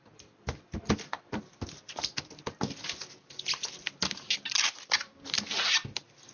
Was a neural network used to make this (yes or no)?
no